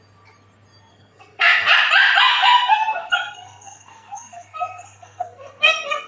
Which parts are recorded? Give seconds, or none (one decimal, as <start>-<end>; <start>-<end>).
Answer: 0.0-0.9; 1.7-2.3